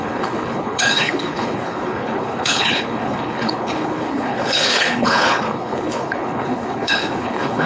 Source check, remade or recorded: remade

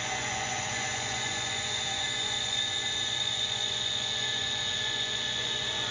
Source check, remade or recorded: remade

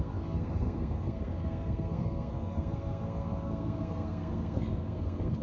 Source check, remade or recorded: remade